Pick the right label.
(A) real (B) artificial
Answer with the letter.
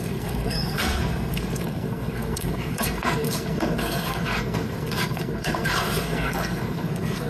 B